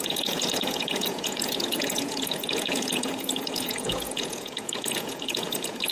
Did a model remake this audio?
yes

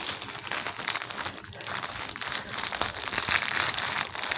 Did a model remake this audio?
no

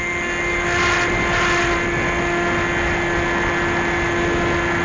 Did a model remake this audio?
no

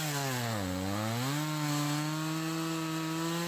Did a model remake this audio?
no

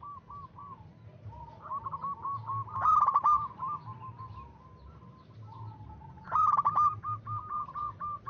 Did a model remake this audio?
no